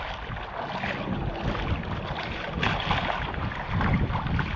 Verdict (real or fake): real